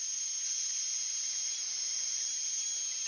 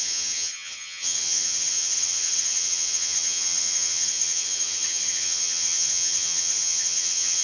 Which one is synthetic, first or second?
second